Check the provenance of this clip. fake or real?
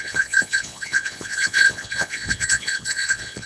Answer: fake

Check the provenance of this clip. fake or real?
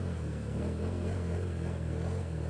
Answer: fake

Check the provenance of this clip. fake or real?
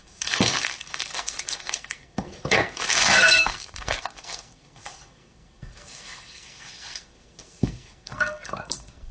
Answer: fake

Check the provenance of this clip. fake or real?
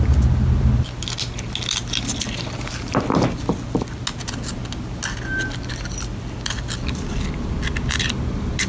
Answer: real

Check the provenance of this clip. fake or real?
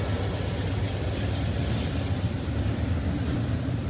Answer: fake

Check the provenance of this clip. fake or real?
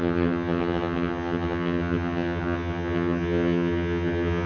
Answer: fake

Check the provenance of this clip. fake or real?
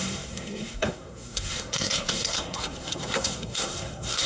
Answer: fake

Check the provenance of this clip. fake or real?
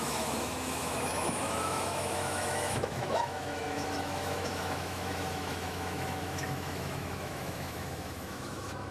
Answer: fake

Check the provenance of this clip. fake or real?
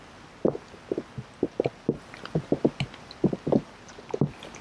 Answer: real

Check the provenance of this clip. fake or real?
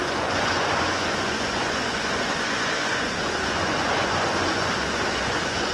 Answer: fake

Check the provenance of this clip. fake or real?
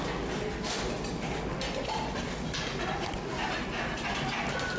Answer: real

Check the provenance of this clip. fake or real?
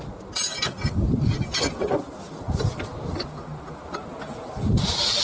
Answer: real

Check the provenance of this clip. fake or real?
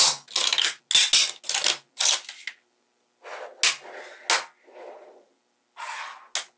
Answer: real